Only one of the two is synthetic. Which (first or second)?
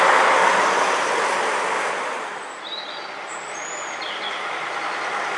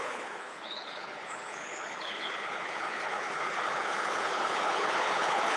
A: second